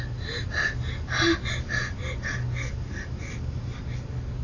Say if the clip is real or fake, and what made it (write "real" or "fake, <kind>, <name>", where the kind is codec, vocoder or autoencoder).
real